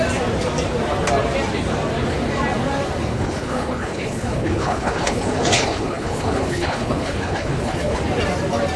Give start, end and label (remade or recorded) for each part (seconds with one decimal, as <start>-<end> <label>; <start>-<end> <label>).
0.0-3.1 recorded; 3.1-8.0 remade; 8.0-8.8 recorded